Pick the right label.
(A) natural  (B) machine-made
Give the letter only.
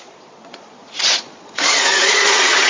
B